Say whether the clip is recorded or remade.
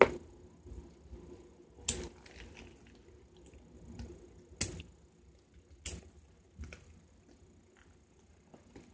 recorded